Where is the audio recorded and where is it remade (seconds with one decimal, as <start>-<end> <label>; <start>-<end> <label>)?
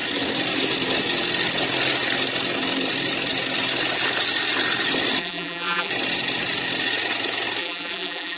0.0-5.2 recorded; 5.2-5.9 remade; 5.9-7.6 recorded; 7.6-8.4 remade